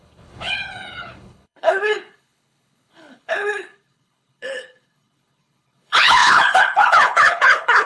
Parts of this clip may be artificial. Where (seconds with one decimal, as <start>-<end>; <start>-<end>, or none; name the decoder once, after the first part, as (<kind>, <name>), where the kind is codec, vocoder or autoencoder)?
0.0-7.9 (codec, HILCodec)